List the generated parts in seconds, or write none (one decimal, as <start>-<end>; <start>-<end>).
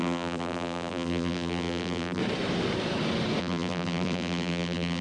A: 0.0-2.2; 3.4-5.0